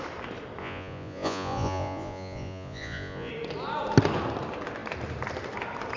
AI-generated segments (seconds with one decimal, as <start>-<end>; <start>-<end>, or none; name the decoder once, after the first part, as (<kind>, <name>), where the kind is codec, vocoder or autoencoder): 0.6-3.3 (vocoder, Vocos)